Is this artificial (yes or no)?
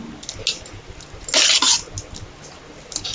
no